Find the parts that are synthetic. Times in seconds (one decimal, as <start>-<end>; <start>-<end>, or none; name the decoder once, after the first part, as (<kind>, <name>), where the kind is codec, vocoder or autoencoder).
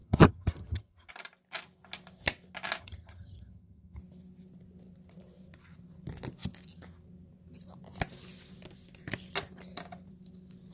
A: 0.0-1.1 (vocoder, HiFi-GAN); 2.8-4.0